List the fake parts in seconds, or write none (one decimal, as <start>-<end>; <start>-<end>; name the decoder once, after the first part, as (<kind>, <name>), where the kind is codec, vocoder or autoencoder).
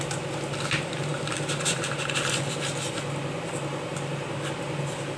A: none